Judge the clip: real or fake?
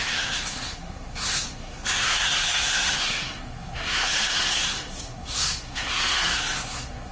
fake